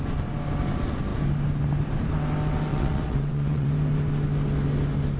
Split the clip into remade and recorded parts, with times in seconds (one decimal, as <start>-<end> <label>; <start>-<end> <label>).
0.0-2.7 recorded; 2.7-3.7 remade; 3.7-5.2 recorded